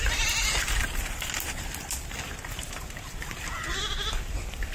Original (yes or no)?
no